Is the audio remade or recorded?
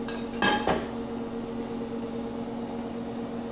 recorded